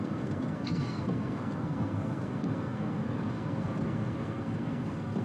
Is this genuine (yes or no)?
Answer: no